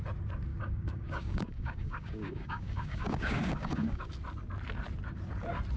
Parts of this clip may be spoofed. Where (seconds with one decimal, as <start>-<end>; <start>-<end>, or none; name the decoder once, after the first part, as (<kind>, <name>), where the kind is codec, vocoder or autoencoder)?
0.5-4.0 (codec, DAC)